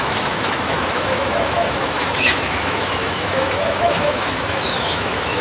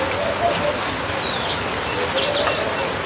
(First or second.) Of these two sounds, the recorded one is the second